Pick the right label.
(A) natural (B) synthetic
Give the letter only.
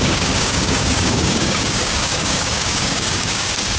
B